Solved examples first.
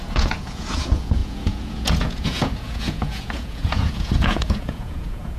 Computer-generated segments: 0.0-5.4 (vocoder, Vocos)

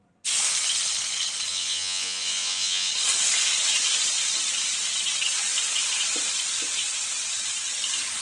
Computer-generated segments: 1.5-2.9 (vocoder, Vocos)

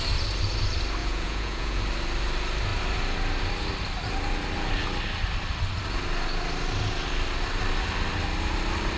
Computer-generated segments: 1.0-1.8 (vocoder, Vocos)

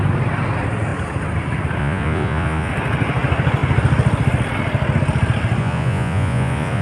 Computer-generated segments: 1.8-2.7 (vocoder, Vocos); 5.6-6.8